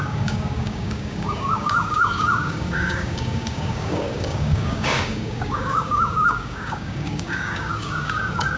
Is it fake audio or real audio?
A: fake